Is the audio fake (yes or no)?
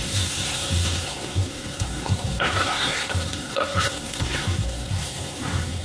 yes